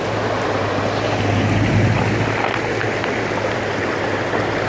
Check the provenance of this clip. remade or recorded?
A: recorded